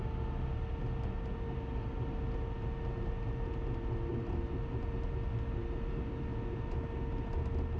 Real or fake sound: real